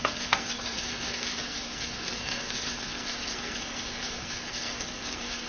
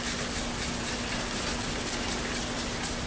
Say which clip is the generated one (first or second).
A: first